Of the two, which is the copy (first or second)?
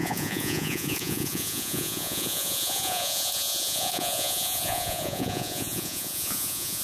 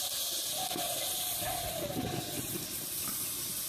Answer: first